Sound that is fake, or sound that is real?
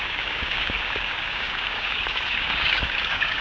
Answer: fake